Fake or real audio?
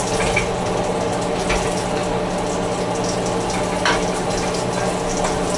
real